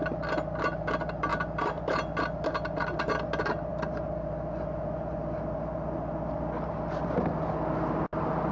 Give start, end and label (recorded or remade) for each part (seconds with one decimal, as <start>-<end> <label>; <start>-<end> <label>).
0.0-8.5 recorded

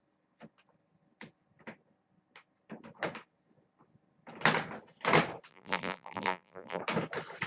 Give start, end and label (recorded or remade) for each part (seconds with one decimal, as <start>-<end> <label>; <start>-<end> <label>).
0.0-5.5 recorded; 5.5-6.8 remade; 6.8-7.5 recorded

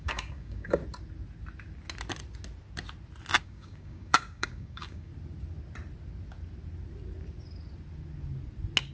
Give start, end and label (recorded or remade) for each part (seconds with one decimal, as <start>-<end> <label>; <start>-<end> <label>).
0.0-0.8 remade; 0.8-3.4 recorded; 3.4-5.1 remade; 5.1-8.9 recorded

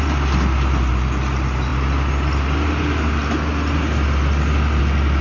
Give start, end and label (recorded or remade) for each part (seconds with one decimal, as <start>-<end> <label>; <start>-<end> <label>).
0.0-5.2 recorded

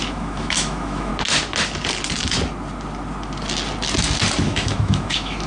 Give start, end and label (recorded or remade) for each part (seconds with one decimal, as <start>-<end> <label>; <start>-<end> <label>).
0.0-1.1 remade; 1.1-4.4 recorded; 4.4-5.5 remade

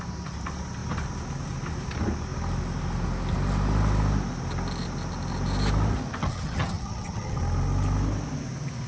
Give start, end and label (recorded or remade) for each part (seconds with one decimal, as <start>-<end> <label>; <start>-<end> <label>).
0.0-6.2 recorded; 6.2-7.4 remade; 7.4-8.9 recorded

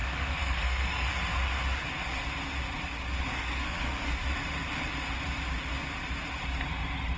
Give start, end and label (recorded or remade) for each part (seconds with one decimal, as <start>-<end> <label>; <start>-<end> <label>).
0.0-1.2 remade; 1.2-3.3 recorded; 3.3-4.1 remade; 4.1-7.2 recorded